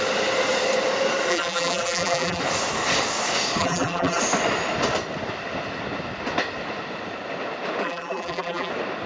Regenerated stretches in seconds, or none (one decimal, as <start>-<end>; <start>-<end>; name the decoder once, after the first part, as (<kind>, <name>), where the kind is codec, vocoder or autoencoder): 1.3-2.4 (vocoder, BigVGAN v2); 3.6-4.2; 7.8-8.7